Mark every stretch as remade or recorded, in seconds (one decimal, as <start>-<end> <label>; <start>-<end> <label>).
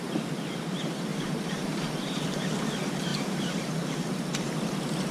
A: 0.0-1.1 recorded; 1.1-2.5 remade; 2.5-3.1 recorded; 3.1-3.9 remade; 3.9-5.1 recorded